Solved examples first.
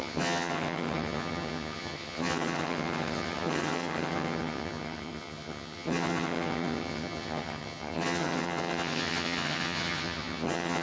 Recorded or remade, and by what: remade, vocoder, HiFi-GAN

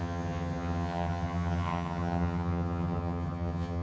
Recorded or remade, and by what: remade, vocoder, HiFi-GAN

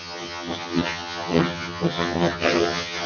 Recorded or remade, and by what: remade, vocoder, HiFi-GAN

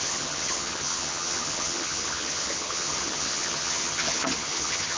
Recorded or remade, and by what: remade, vocoder, HiFi-GAN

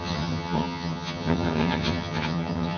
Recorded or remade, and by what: remade, vocoder, HiFi-GAN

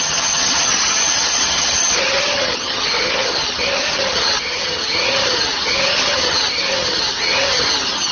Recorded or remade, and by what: remade, vocoder, HiFi-GAN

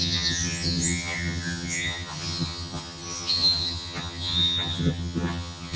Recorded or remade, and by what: remade, vocoder, HiFi-GAN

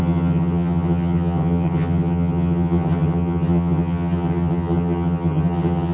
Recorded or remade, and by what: remade, vocoder, HiFi-GAN